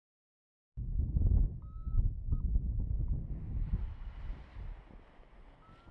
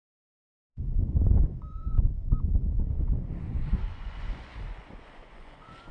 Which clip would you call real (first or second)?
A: first